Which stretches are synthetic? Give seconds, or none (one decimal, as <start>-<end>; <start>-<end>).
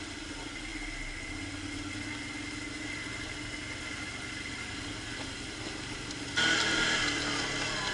none